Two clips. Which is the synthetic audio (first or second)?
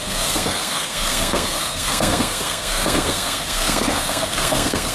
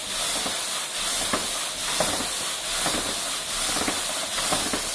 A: first